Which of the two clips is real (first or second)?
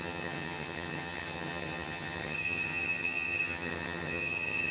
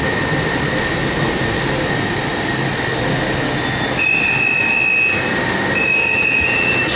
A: second